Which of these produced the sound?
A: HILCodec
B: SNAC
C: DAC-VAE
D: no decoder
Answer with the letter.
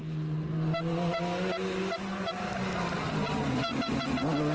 D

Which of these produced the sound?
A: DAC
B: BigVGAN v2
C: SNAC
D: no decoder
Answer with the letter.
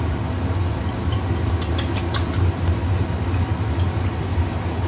D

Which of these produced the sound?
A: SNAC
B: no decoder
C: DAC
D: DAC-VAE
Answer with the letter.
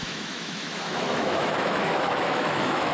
D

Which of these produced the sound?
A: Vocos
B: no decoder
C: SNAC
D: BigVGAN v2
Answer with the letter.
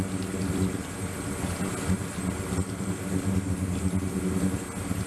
B